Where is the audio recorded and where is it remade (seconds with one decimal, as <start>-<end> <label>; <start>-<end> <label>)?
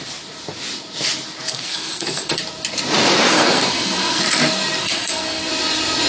0.0-1.5 recorded; 1.5-2.4 remade; 2.4-3.3 recorded; 3.3-4.2 remade; 4.2-4.8 recorded; 4.8-5.5 remade; 5.5-6.1 recorded